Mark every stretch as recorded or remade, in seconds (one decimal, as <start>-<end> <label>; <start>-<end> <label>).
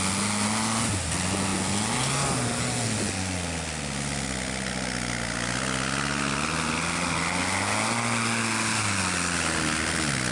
0.0-10.3 recorded